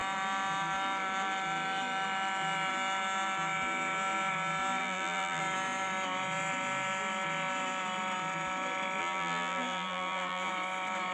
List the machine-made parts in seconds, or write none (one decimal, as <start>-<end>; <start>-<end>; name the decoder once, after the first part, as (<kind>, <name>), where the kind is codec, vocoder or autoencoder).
4.8-5.4 (vocoder, BigVGAN v2); 9.0-10.5

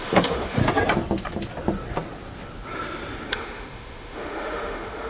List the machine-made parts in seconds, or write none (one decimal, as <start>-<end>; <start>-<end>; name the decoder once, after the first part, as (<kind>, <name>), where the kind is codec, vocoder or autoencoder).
0.0-0.6 (autoencoder, DAC-VAE); 3.3-5.1

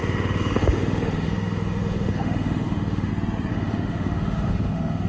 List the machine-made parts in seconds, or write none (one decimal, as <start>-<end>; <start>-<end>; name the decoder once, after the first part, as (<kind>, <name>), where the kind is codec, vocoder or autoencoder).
0.0-3.1 (autoencoder, DAC-VAE); 3.5-5.1

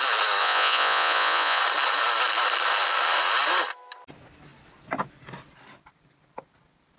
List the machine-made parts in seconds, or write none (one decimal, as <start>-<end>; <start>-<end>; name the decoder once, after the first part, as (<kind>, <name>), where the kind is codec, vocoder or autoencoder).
0.4-1.6 (vocoder, Vocos)

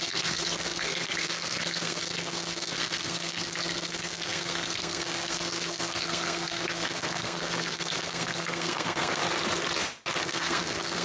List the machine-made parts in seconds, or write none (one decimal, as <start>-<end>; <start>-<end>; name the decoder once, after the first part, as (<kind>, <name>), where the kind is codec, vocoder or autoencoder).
0.0-9.2 (codec, SNAC); 10.2-11.0